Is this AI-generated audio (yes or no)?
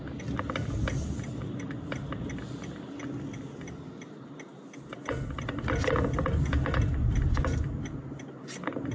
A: no